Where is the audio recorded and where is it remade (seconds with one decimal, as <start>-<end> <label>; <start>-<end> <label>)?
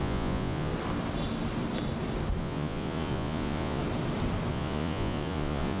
0.0-0.7 remade; 0.7-2.4 recorded; 2.4-3.8 remade; 3.8-4.5 recorded; 4.5-5.8 remade